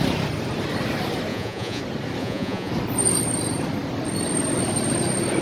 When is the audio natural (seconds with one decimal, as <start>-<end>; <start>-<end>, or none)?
0.0-1.3; 1.8-2.2; 2.7-5.4